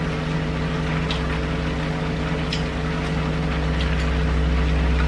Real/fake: real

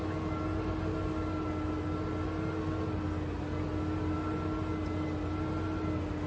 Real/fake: real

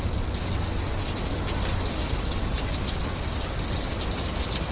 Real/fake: real